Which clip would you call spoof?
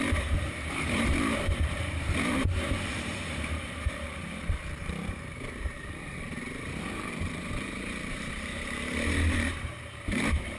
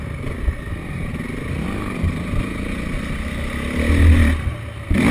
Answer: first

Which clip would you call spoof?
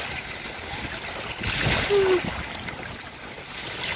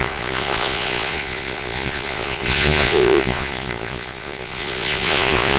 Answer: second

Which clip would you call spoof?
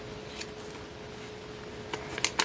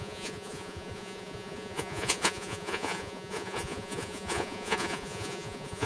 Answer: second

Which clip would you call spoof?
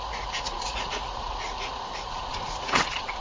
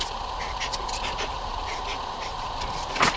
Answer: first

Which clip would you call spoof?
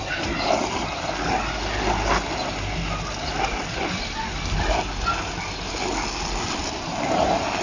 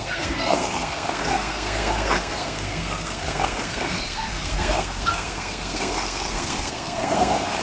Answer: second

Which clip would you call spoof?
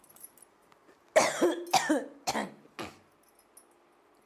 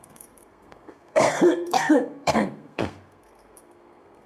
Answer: second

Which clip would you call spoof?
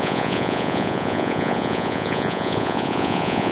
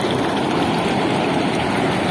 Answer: first